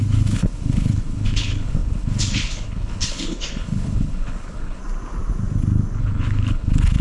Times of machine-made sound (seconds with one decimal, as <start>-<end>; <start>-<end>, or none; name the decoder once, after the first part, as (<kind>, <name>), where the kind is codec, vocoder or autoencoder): 0.0-4.8 (codec, HILCodec); 6.0-7.0